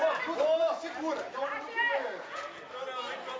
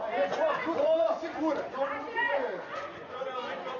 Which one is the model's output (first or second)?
second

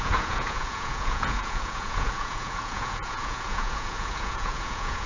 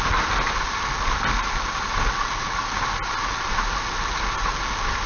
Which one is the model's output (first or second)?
first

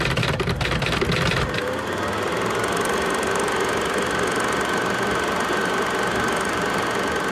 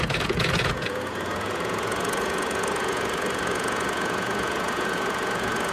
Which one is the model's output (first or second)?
second